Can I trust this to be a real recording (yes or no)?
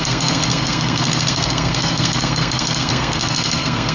no